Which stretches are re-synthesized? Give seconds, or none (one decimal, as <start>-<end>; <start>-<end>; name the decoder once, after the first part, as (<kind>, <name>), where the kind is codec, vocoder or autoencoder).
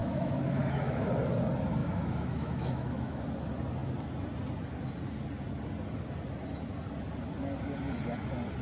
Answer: 0.0-1.1 (autoencoder, DAC-VAE); 1.8-3.2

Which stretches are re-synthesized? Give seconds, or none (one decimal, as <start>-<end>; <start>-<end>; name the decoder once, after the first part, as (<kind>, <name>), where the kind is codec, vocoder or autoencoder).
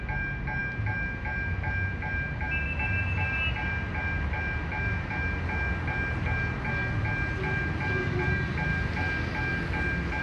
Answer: none